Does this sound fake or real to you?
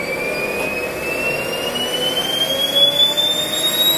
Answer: real